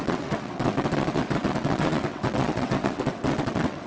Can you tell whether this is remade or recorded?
remade